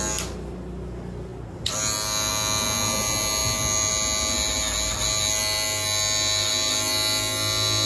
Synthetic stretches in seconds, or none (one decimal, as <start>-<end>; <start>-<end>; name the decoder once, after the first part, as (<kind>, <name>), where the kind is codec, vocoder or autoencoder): none